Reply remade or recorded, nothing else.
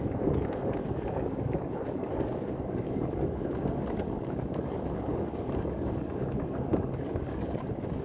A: remade